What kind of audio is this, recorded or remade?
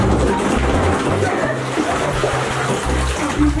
recorded